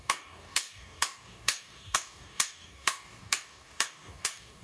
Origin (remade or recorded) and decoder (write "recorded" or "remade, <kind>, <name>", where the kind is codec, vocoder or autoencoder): remade, codec, DAC